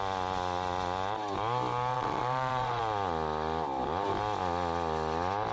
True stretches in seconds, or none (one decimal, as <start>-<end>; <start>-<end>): 0.0-1.9; 2.8-5.5